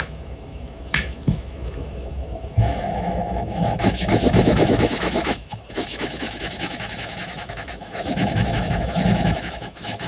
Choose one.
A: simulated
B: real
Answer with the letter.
A